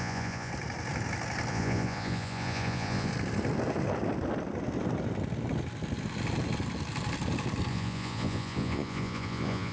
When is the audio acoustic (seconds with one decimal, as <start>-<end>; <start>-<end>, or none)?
0.5-1.5; 3.1-7.7